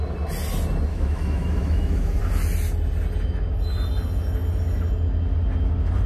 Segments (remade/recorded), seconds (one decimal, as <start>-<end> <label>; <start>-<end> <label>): 0.0-0.9 recorded; 0.9-2.2 remade; 2.2-6.1 recorded